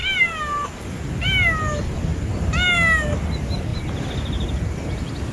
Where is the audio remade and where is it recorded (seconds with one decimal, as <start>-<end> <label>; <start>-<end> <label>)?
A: 0.0-5.3 recorded

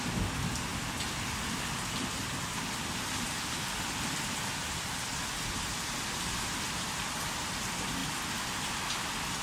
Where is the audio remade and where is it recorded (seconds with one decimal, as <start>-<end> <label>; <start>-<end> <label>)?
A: 0.0-9.4 recorded

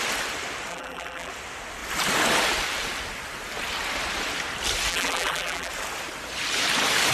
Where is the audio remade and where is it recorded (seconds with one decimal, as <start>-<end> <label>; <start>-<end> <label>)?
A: 0.0-0.7 recorded; 0.7-1.3 remade; 1.3-4.9 recorded; 4.9-5.7 remade; 5.7-7.1 recorded

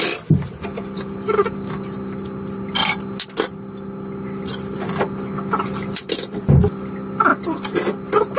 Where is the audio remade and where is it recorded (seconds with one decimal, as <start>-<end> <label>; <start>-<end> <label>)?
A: 0.0-8.4 recorded

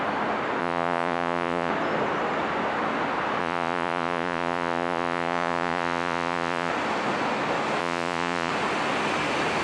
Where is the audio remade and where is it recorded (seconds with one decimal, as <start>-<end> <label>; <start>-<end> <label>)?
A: 0.0-0.6 recorded; 0.6-1.7 remade; 1.7-3.4 recorded; 3.4-6.7 remade; 6.7-7.8 recorded; 7.8-8.5 remade; 8.5-9.6 recorded